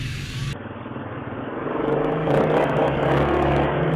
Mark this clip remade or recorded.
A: remade